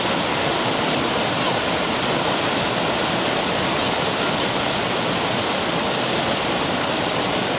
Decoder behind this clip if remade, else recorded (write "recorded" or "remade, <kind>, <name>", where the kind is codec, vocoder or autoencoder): recorded